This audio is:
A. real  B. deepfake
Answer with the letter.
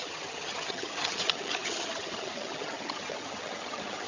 B